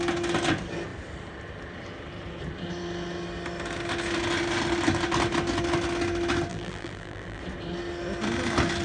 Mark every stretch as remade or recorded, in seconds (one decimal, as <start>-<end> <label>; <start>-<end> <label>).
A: 0.0-6.5 recorded; 6.5-7.4 remade; 7.4-8.8 recorded